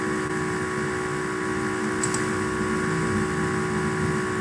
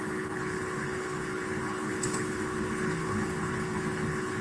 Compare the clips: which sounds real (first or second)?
first